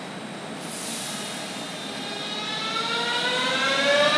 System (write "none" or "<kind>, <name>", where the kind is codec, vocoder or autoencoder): none